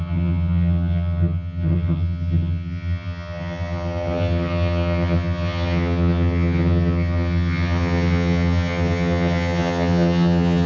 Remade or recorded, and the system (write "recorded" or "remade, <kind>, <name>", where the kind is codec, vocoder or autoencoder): remade, vocoder, HiFi-GAN